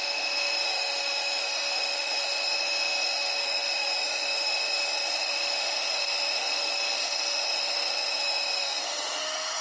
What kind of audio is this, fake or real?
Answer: fake